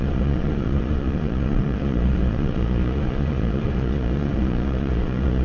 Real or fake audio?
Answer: fake